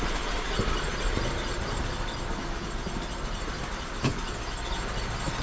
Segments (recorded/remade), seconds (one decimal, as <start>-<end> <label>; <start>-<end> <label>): 0.0-5.4 recorded